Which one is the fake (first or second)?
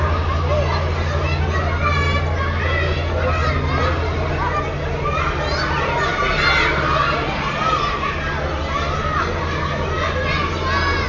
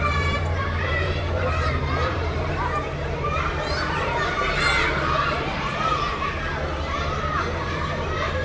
second